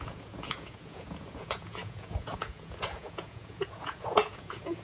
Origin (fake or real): fake